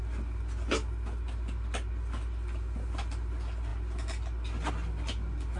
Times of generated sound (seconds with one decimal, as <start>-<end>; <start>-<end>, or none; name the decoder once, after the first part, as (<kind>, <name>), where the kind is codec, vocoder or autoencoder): none